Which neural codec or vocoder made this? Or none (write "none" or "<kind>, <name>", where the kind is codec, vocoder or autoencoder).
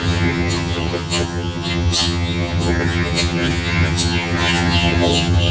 vocoder, HiFi-GAN